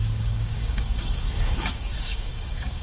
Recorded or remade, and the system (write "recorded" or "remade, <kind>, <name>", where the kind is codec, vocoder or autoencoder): remade, codec, DAC